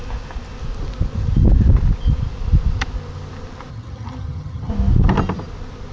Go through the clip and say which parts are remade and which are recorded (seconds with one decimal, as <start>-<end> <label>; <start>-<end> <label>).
0.0-3.7 recorded; 3.7-4.7 remade; 4.7-5.9 recorded